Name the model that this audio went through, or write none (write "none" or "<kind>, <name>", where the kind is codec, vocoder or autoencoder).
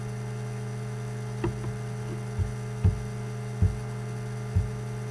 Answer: none